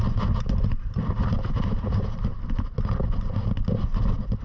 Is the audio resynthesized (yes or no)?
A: no